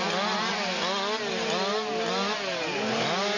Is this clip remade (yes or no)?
no